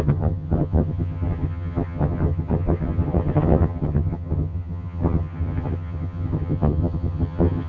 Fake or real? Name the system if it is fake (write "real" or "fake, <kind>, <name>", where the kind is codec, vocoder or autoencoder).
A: fake, vocoder, HiFi-GAN